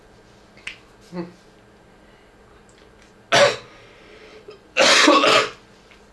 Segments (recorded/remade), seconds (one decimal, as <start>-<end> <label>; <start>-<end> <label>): 0.0-4.3 recorded; 4.3-5.6 remade; 5.6-6.1 recorded